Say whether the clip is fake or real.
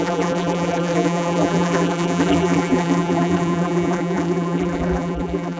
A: fake